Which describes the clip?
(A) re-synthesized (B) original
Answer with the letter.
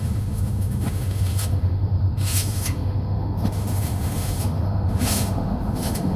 A